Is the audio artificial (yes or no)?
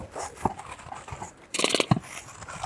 no